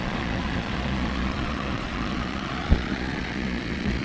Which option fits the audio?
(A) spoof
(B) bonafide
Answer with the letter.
A